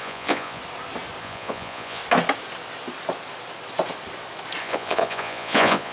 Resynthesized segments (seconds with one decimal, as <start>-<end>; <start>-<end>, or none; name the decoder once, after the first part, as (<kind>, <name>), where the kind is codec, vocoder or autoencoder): 0.0-0.6 (vocoder, Vocos); 1.2-2.0; 4.6-5.9